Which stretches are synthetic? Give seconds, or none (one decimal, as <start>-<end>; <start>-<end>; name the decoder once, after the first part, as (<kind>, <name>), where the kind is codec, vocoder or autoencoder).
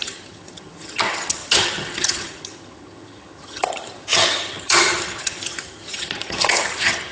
0.0-7.1 (vocoder, HiFi-GAN)